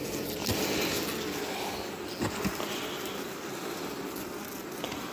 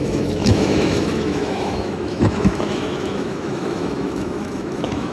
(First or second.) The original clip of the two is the first